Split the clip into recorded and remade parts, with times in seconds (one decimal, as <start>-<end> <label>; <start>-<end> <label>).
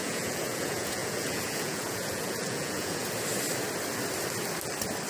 0.0-3.0 remade; 3.0-5.1 recorded